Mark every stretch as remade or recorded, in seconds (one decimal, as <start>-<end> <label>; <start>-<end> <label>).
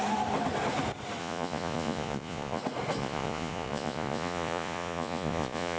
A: 0.0-1.2 recorded; 1.2-2.6 remade; 2.6-3.0 recorded; 3.0-5.8 remade